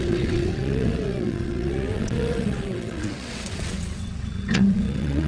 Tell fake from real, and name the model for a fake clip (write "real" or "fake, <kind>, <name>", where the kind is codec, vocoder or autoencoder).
fake, vocoder, WaveNeXt